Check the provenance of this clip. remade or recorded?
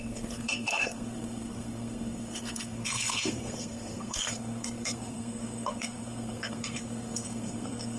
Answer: remade